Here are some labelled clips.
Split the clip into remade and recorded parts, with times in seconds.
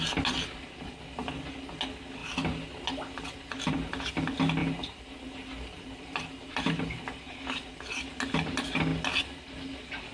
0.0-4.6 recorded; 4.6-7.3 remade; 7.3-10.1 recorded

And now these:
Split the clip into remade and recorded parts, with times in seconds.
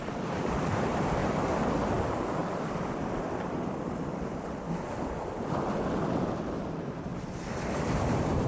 0.0-1.2 remade; 1.2-2.0 recorded; 2.0-2.4 remade; 2.4-6.4 recorded; 6.4-7.1 remade; 7.1-7.7 recorded; 7.7-8.5 remade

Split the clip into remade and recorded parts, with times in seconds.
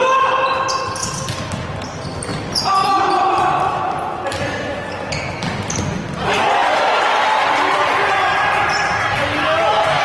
0.0-2.3 recorded; 2.3-3.7 remade; 3.7-6.6 recorded; 6.6-8.1 remade; 8.1-10.0 recorded